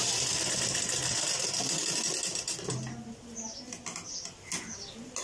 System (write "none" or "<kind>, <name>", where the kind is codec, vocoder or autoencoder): none